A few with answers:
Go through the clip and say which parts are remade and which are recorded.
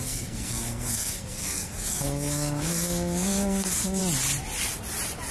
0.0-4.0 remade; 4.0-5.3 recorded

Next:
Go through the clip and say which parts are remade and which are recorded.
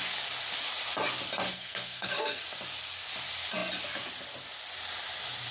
0.0-1.5 recorded; 1.5-2.4 remade; 2.4-5.5 recorded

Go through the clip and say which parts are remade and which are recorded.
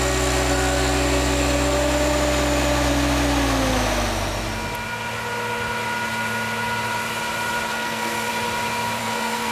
0.0-7.7 recorded; 7.7-8.3 remade; 8.3-9.0 recorded; 9.0-9.5 remade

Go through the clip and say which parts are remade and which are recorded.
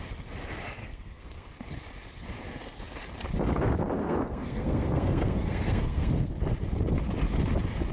0.0-0.8 recorded; 0.8-1.5 remade; 1.5-4.0 recorded; 4.0-6.3 remade; 6.3-7.9 recorded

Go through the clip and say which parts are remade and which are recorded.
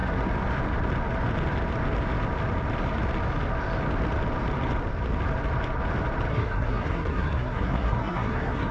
0.0-6.3 recorded; 6.3-8.7 remade